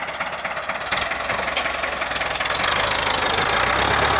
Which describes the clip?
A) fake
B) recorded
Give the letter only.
B